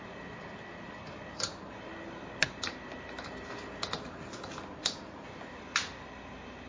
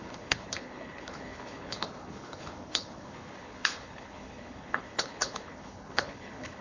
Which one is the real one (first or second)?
first